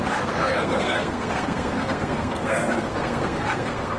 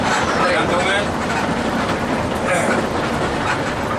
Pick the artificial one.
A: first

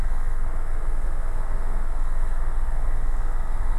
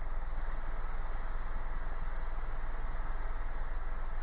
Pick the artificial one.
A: first